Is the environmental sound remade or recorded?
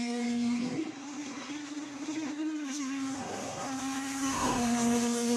remade